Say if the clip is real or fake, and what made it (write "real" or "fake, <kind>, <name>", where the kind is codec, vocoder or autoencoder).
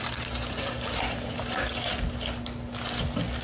real